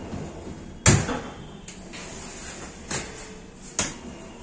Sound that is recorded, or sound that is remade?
recorded